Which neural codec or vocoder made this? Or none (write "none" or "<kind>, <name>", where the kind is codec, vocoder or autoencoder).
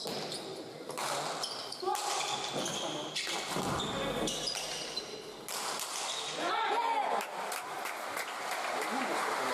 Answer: none